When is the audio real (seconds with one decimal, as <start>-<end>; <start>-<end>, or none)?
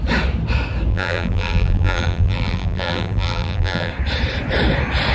0.0-0.9; 3.9-5.1